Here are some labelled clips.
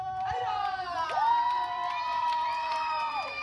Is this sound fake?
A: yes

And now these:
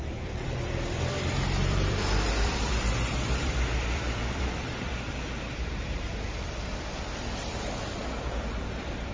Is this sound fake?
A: yes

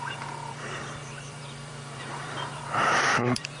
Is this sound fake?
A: yes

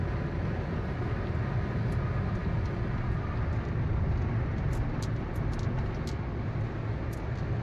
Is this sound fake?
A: no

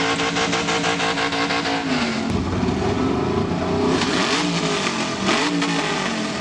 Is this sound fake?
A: no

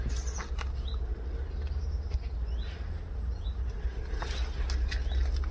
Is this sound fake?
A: no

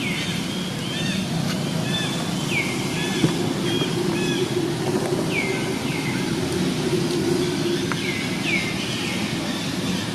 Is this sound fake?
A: no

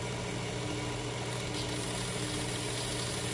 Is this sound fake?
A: no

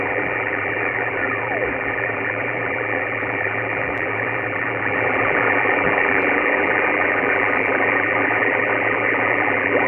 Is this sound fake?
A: yes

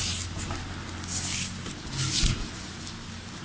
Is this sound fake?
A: yes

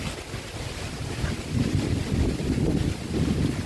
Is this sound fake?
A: no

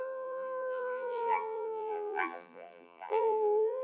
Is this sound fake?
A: yes